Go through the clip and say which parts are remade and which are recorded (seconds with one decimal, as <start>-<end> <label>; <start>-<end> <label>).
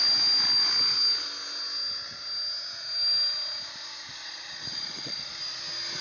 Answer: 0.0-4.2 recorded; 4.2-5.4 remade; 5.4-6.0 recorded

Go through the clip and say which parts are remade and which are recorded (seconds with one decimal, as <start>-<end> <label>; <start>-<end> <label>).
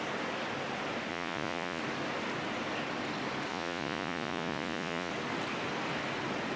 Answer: 0.0-1.1 recorded; 1.1-1.8 remade; 1.8-3.5 recorded; 3.5-5.1 remade; 5.1-6.6 recorded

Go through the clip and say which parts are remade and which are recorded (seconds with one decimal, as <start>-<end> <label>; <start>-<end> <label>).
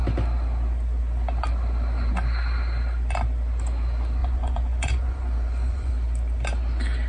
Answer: 0.0-4.2 recorded; 4.2-5.9 remade; 5.9-7.1 recorded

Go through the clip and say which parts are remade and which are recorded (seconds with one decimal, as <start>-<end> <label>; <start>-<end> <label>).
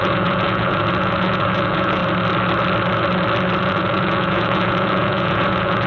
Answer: 0.0-2.0 remade; 2.0-3.6 recorded; 3.6-5.9 remade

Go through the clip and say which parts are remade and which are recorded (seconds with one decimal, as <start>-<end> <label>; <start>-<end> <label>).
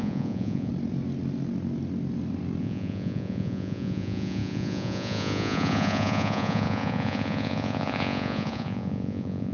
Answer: 0.0-0.7 remade; 0.7-2.6 recorded; 2.6-9.5 remade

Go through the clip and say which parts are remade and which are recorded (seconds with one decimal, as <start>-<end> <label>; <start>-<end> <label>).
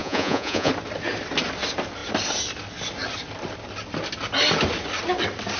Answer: 0.0-0.7 remade; 0.7-5.6 recorded